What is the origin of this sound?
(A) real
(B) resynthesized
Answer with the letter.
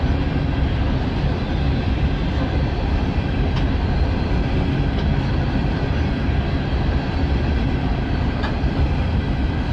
A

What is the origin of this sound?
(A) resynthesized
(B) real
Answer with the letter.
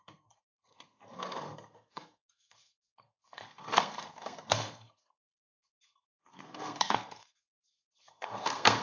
A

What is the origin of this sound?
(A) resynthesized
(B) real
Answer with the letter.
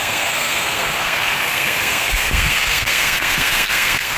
A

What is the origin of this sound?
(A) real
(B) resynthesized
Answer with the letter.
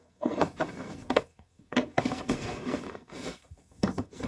B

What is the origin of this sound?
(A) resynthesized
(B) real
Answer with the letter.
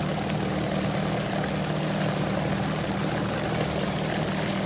B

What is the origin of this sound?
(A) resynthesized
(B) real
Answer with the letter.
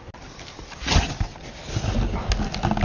B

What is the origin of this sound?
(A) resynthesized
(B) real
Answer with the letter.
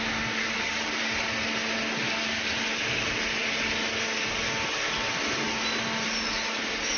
B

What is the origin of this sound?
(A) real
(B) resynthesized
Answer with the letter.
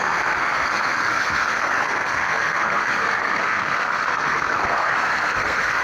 B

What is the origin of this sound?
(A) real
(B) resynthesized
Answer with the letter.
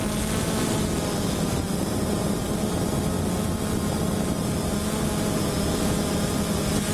A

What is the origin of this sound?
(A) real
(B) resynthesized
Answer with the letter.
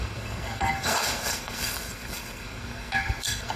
B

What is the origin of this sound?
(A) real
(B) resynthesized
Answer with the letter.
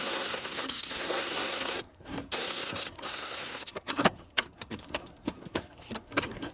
B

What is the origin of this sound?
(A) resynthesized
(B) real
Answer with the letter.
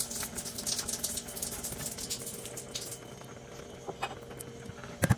B